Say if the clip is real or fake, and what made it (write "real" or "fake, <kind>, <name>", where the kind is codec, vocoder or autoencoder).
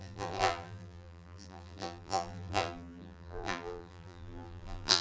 fake, vocoder, BigVGAN v2